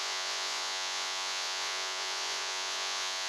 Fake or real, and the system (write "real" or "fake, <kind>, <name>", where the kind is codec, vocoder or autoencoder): fake, vocoder, Vocos